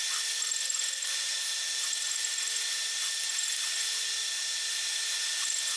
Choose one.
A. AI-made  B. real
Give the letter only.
B